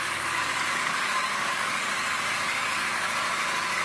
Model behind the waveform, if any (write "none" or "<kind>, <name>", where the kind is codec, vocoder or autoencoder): codec, DAC